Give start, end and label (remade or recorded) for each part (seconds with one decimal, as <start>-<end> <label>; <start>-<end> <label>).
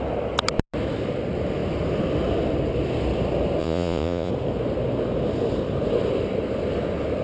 0.0-3.6 recorded; 3.6-4.3 remade; 4.3-7.2 recorded